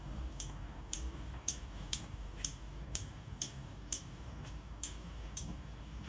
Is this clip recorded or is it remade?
remade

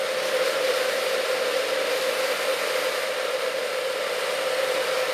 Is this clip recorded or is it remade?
recorded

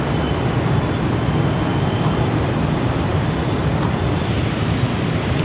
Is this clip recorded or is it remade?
recorded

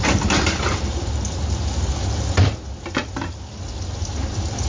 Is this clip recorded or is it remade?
recorded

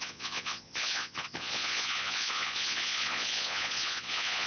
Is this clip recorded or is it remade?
remade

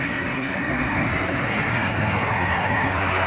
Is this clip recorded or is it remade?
remade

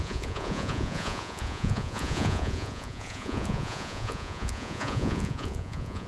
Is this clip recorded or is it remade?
remade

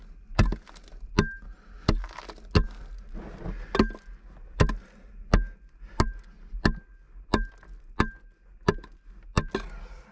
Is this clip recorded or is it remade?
recorded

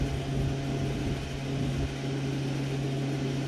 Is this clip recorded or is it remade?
recorded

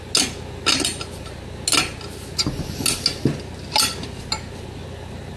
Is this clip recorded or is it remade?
recorded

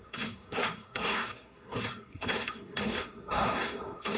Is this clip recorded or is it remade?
remade